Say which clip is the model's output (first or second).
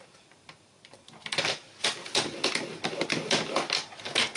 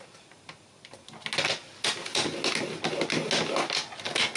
first